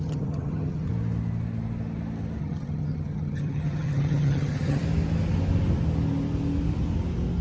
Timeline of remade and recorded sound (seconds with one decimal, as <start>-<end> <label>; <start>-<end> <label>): 0.0-0.9 remade; 0.9-2.4 recorded; 2.4-4.8 remade; 4.8-7.4 recorded